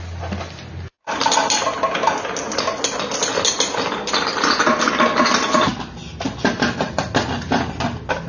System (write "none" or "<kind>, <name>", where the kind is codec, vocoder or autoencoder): none